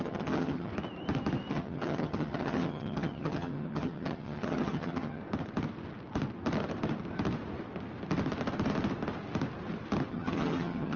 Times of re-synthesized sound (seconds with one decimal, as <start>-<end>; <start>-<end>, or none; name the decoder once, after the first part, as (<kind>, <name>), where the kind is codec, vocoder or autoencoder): 0.0-0.7 (vocoder, HiFi-GAN); 1.5-5.2; 10.1-11.0